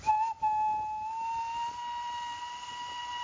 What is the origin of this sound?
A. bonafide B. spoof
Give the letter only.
A